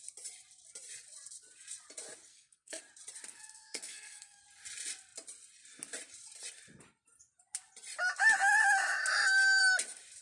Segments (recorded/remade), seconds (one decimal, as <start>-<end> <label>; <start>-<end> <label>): 0.0-2.3 recorded; 2.3-2.8 remade; 2.8-3.3 recorded; 3.3-4.4 remade; 4.4-10.2 recorded